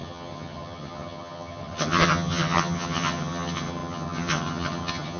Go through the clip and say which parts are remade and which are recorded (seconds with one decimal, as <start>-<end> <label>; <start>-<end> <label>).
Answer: 0.0-5.2 remade